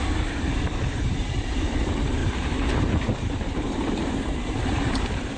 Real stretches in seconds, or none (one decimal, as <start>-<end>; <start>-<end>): 2.2-3.9